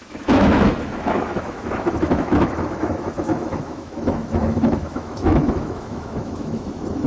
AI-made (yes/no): yes